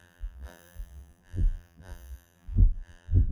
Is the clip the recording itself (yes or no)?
no